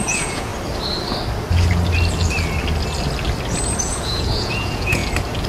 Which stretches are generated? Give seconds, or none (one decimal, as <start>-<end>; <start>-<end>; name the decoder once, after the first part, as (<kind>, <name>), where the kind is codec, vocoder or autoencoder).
0.0-0.5 (vocoder, Vocos); 3.8-5.0